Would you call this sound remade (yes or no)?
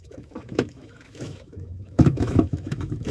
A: yes